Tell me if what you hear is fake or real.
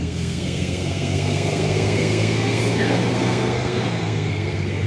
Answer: fake